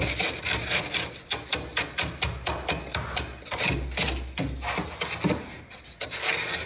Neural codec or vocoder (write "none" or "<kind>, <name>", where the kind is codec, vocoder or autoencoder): none